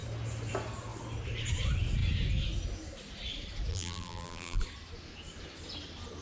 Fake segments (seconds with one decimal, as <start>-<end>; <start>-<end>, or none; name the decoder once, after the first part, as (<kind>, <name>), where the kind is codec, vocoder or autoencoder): 3.7-4.6 (vocoder, BigVGAN v2)